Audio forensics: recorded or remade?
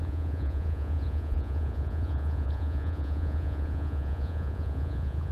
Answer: remade